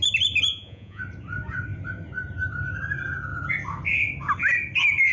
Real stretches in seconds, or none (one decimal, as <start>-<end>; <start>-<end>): 0.0-0.5; 1.0-5.1

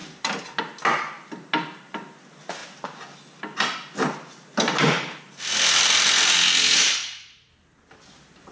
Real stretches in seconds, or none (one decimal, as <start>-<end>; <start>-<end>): 0.0-7.0; 7.5-8.5

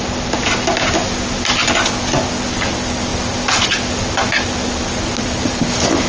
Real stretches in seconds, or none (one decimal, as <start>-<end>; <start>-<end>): 0.0-6.1

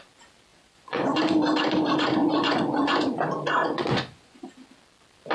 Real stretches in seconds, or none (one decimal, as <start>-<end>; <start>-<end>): 0.0-0.5; 1.2-2.2; 3.0-3.6; 4.5-5.3

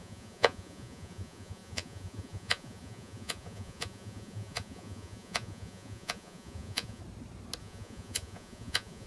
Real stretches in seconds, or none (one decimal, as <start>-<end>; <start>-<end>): 7.0-7.6

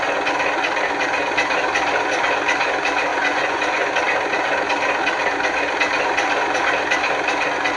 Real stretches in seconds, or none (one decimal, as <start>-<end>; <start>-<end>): 0.0-3.1; 3.9-7.8

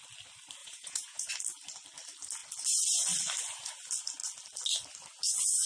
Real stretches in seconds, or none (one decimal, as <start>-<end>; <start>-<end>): 0.0-0.6; 1.3-5.7

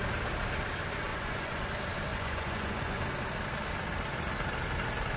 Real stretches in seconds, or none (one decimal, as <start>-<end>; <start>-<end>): 0.0-1.1; 1.7-2.1; 3.0-5.2